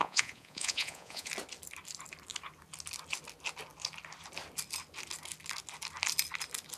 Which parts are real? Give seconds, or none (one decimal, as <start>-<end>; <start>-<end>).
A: 1.3-6.8

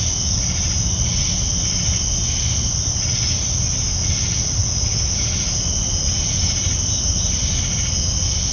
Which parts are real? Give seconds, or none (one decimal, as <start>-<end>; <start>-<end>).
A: 0.0-8.5

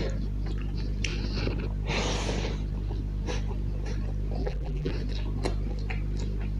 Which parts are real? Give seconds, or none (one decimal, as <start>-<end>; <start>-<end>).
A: 0.0-4.4; 4.9-6.6

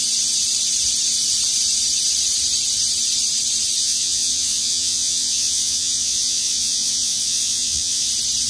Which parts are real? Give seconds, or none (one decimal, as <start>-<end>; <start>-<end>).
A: 0.0-3.8; 8.1-8.5

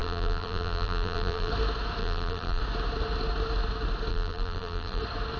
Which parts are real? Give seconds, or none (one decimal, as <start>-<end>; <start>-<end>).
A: 1.5-2.0; 2.6-4.1; 5.0-5.4

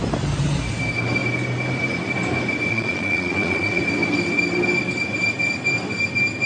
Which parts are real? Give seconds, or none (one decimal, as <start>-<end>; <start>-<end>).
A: 0.0-2.7; 3.8-6.5